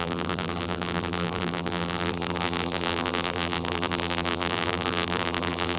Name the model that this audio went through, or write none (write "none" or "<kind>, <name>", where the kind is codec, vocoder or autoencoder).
vocoder, BigVGAN v2